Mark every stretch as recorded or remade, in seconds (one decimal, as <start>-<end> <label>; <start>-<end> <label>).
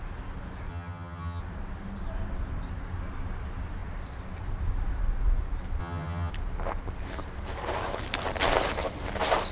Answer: 0.0-0.7 recorded; 0.7-1.4 remade; 1.4-5.8 recorded; 5.8-6.3 remade; 6.3-9.5 recorded